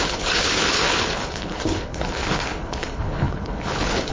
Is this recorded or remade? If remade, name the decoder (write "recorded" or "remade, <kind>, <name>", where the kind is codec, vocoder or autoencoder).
remade, codec, HILCodec